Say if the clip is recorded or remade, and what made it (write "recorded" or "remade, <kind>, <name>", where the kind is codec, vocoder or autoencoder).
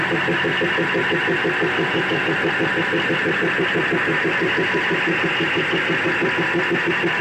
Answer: recorded